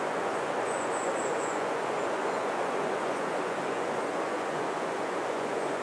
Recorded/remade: remade